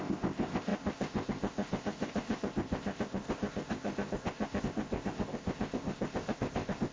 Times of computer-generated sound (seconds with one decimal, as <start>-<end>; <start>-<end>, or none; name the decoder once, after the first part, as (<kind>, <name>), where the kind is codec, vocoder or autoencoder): 0.0-6.9 (codec, ZipCodec)